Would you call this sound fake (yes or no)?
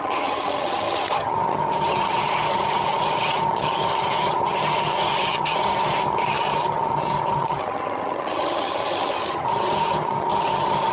yes